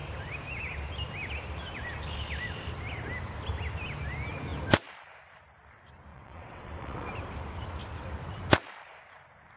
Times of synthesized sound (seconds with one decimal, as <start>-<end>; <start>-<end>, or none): 6.1-7.1